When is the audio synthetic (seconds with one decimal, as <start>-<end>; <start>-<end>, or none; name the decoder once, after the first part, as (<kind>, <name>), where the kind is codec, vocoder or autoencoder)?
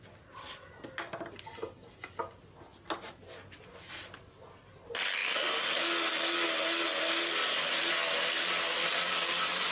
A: none